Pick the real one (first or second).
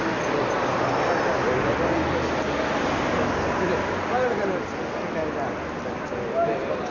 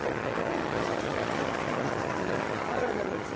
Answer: first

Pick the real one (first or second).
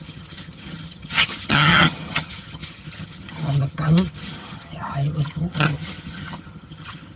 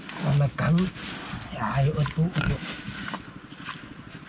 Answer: second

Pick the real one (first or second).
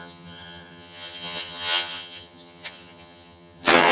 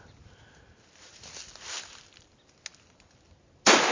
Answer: second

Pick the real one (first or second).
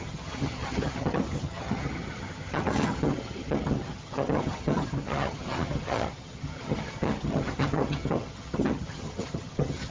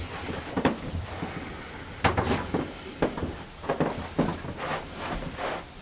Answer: second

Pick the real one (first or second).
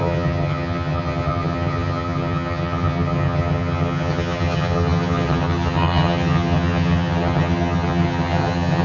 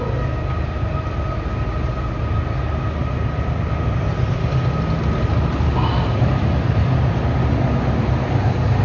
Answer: second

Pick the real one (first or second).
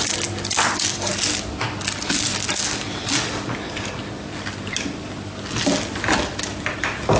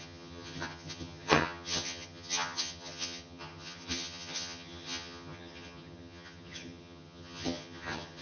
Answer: first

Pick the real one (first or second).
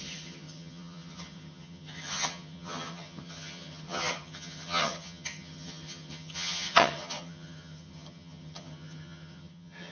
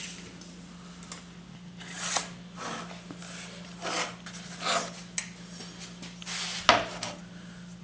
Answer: second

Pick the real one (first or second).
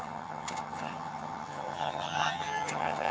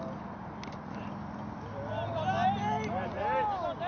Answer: second